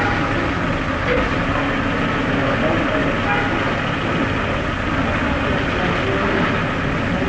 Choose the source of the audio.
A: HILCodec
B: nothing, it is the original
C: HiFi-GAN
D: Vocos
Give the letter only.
B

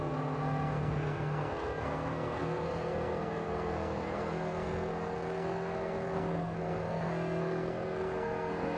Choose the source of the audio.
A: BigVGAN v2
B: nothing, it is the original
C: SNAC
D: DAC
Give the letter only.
C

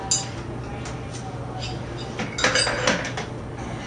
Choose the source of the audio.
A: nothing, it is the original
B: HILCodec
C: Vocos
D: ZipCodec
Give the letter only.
A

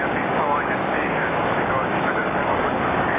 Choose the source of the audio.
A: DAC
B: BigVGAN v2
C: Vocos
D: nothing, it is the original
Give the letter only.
A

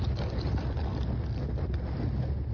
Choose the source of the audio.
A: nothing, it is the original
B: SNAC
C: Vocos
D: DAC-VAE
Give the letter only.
A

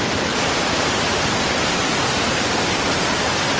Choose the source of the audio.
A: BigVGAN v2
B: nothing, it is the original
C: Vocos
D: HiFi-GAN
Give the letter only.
B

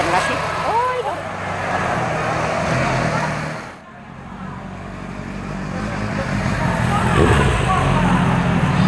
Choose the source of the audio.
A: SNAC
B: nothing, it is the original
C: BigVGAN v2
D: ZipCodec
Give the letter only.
B